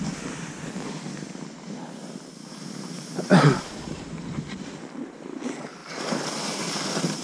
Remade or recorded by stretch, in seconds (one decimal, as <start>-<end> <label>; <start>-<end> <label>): 0.0-2.5 recorded; 2.5-4.2 remade; 4.2-7.2 recorded